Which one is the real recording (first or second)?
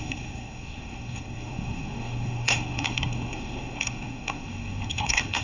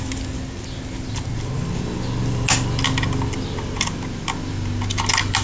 second